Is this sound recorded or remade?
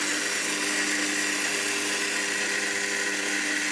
recorded